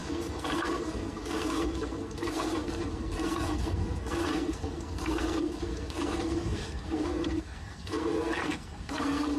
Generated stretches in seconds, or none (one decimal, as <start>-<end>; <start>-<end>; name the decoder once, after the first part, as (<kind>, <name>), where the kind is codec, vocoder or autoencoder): 0.0-9.4 (codec, SNAC)